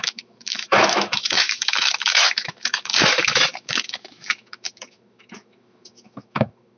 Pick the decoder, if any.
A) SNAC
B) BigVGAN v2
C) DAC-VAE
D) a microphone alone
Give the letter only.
C